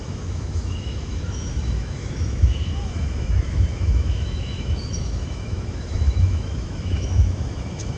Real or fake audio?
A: fake